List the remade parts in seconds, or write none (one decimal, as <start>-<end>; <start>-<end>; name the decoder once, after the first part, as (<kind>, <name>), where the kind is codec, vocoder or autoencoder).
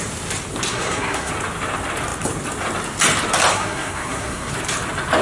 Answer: 0.7-1.3 (codec, SNAC); 3.5-4.5